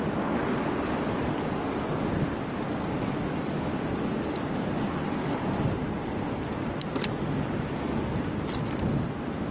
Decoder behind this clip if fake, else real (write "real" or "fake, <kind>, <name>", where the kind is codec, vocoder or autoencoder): real